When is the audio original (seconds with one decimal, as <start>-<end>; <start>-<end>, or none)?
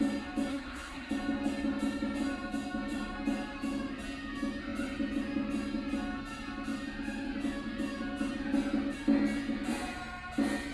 0.0-0.5; 1.1-10.7